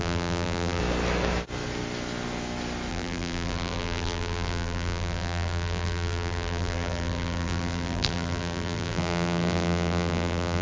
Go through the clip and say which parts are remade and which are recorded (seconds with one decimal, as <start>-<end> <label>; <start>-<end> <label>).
0.0-0.8 remade; 0.8-2.9 recorded; 2.9-10.6 remade